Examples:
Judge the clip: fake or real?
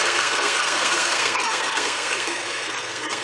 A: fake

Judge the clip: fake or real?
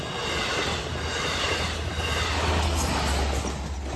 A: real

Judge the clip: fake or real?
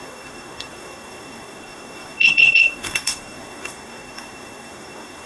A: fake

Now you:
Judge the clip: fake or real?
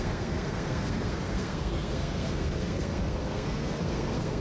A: fake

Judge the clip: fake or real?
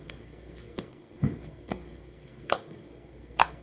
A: fake